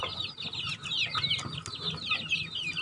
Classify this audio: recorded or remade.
recorded